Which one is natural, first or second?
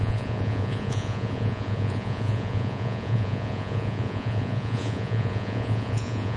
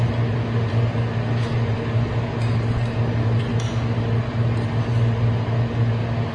second